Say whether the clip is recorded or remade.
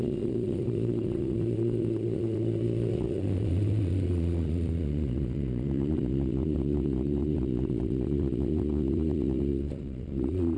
remade